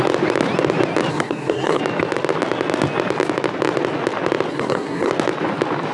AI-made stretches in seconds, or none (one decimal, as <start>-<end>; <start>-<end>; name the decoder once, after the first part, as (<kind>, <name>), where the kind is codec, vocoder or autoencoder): 1.1-1.8 (codec, SNAC); 4.5-5.1